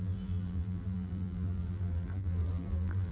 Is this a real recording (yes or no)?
no